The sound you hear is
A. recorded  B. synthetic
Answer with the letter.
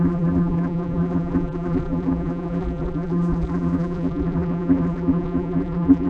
B